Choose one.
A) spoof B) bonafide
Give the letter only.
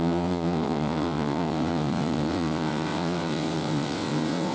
A